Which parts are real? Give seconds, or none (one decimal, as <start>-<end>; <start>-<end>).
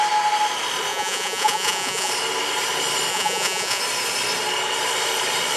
0.0-0.9; 2.1-3.1; 3.8-5.6